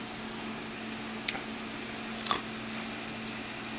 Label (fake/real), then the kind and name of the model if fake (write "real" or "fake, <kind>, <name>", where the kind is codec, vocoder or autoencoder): real